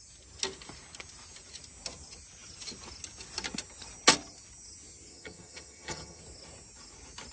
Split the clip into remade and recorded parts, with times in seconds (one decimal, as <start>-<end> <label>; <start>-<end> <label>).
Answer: 0.0-5.1 recorded; 5.1-6.2 remade; 6.2-7.3 recorded